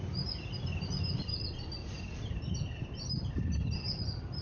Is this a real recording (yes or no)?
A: yes